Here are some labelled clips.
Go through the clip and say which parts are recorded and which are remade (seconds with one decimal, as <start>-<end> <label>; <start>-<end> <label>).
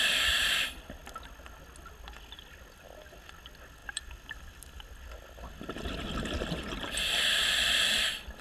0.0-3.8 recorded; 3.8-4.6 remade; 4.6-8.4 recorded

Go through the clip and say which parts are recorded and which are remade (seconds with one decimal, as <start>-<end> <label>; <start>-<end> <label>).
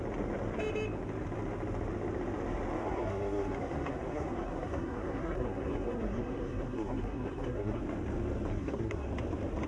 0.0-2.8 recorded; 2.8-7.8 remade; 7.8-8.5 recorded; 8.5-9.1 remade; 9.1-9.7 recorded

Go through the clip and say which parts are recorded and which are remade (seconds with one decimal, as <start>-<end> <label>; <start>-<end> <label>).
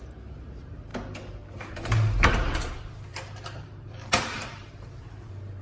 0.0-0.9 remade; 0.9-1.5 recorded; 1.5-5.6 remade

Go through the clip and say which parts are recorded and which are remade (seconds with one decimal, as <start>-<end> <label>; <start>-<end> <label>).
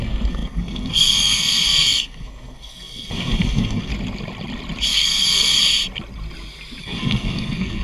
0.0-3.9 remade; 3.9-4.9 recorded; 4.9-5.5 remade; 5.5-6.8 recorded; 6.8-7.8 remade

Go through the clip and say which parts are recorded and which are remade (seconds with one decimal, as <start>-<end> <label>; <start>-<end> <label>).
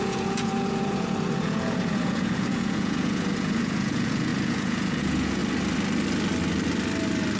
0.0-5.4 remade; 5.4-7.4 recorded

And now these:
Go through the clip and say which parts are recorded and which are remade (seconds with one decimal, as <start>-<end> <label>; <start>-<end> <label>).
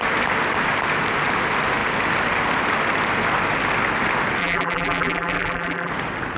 0.0-4.4 recorded; 4.4-5.9 remade; 5.9-6.4 recorded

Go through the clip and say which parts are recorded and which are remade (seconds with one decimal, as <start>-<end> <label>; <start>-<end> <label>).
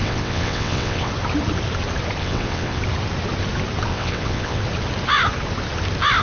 0.0-1.1 remade; 1.1-2.2 recorded; 2.2-2.8 remade; 2.8-3.9 recorded; 3.9-4.6 remade; 4.6-6.2 recorded